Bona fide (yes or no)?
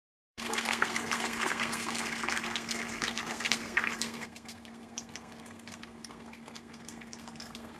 no